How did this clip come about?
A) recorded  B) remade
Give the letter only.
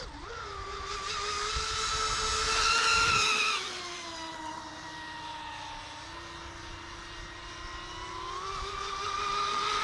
A